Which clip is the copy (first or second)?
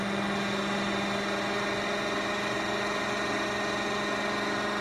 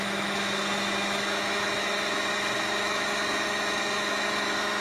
second